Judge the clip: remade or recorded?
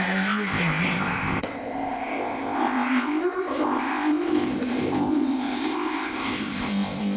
remade